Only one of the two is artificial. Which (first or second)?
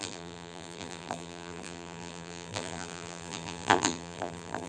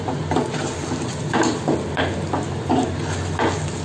first